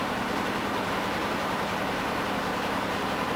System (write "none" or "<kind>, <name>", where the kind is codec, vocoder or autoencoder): vocoder, BigVGAN v2